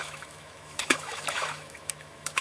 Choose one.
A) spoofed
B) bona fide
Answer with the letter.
A